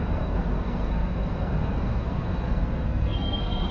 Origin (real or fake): fake